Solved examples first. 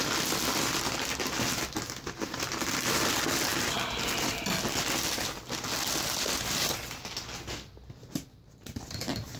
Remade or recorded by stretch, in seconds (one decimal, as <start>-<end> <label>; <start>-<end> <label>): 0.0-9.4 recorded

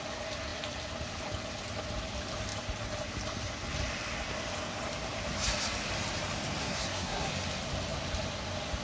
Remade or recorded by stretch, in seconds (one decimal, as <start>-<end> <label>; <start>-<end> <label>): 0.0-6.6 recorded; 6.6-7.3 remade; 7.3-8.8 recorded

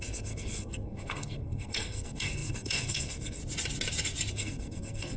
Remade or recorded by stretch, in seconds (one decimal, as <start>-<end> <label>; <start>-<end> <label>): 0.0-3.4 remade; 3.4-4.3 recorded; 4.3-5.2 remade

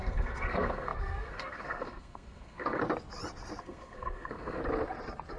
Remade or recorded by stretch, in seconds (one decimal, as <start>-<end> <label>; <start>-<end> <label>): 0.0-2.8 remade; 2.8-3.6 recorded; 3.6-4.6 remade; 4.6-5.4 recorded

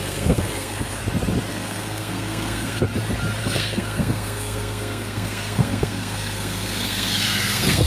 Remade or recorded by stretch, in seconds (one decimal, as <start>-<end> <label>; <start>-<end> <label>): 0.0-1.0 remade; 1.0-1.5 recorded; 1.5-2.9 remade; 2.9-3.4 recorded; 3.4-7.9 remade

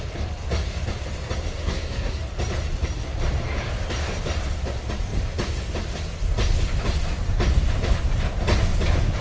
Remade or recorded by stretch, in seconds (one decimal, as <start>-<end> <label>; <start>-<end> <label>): 0.0-1.6 recorded; 1.6-2.2 remade; 2.2-9.2 recorded

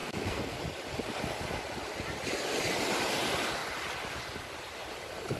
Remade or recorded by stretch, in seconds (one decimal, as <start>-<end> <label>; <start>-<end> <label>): 0.0-0.6 remade; 0.6-5.4 recorded